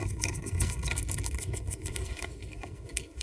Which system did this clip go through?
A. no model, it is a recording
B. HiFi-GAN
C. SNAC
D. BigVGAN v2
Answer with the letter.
C